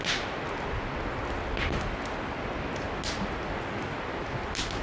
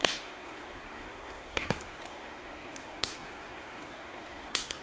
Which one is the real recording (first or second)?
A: first